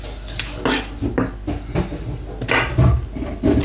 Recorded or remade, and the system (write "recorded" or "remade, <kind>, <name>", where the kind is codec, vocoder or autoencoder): recorded